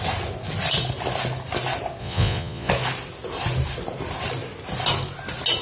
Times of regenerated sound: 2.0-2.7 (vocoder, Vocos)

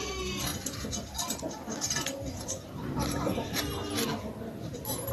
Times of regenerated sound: 0.5-3.6 (vocoder, BigVGAN v2)

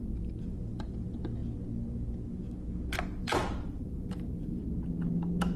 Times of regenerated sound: 0.0-1.4 (vocoder, BigVGAN v2); 2.9-4.6